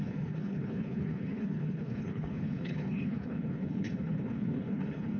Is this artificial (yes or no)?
yes